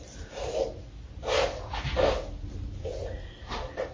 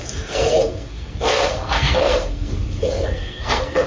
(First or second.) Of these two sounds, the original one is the first